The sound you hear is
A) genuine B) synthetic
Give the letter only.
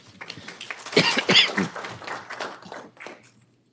A